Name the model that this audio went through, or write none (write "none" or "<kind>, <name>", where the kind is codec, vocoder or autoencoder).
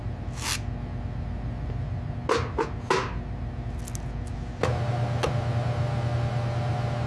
none